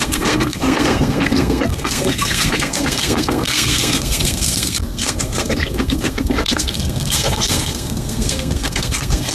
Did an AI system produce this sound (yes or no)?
yes